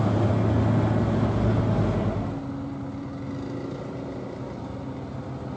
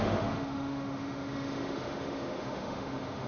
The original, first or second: first